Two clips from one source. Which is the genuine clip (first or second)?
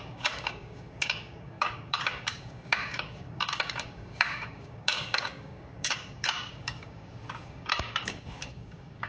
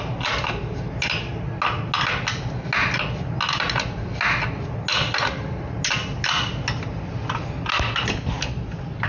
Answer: second